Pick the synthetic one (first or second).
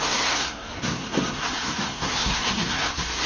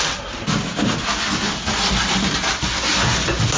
first